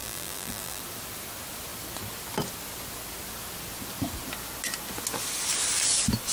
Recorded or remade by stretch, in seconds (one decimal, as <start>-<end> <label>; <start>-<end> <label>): 0.0-0.8 remade; 0.8-6.3 recorded